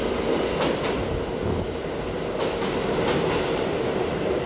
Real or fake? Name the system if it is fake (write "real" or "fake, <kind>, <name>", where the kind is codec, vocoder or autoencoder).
real